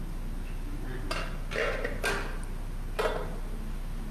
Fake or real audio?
real